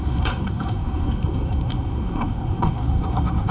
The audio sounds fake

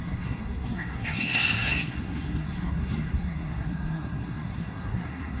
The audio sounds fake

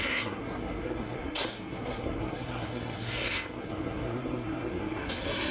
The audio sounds fake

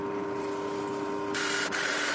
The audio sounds real